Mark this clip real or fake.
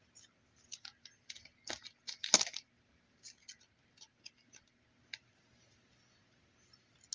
real